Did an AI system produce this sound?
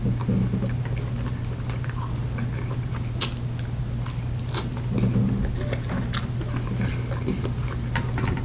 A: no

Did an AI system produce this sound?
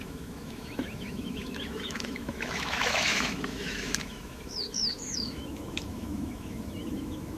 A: yes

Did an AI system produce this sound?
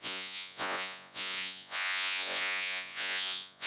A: yes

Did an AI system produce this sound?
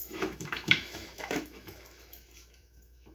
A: yes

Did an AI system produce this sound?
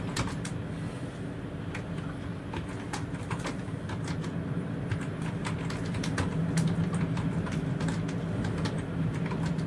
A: no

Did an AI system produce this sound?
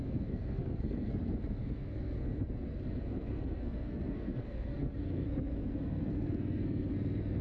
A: yes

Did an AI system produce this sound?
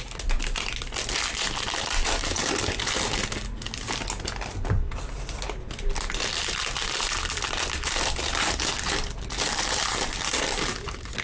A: no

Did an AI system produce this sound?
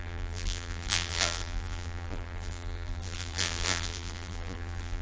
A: yes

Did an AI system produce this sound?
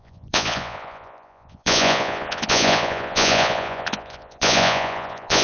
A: yes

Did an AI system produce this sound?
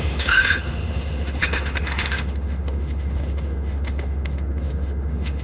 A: yes